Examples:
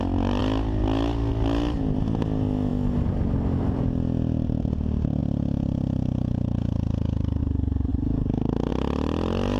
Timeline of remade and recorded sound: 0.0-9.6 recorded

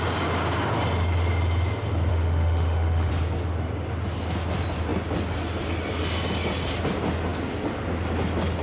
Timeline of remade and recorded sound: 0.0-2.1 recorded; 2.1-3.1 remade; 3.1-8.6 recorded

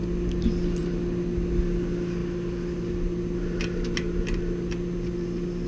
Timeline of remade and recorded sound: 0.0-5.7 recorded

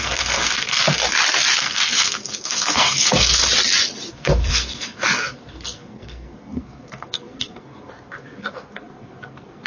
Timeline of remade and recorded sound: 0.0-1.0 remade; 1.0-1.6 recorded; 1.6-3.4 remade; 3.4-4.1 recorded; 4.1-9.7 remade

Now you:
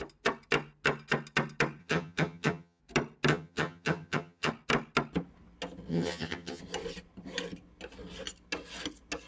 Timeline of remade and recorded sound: 0.0-1.8 recorded; 1.8-2.8 remade; 2.8-3.3 recorded; 3.3-4.5 remade; 4.5-5.9 recorded; 5.9-6.6 remade; 6.6-9.3 recorded

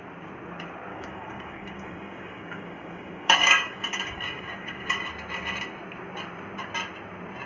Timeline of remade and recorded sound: 0.0-0.9 recorded; 0.9-5.1 remade; 5.1-7.5 recorded

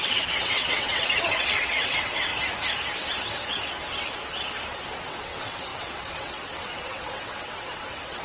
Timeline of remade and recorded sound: 0.0-2.3 remade; 2.3-5.0 recorded; 5.0-8.2 remade

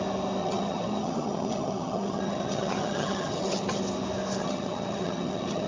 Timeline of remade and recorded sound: 0.0-0.4 recorded; 0.4-3.8 remade; 3.8-4.4 recorded; 4.4-5.7 remade